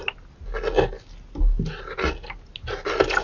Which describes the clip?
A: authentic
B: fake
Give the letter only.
A